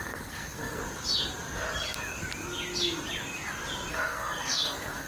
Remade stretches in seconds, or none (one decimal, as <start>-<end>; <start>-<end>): 0.0-0.8; 3.9-5.1